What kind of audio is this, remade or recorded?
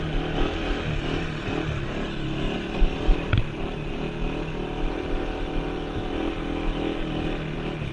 recorded